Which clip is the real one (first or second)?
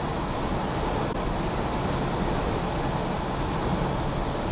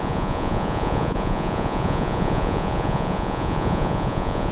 first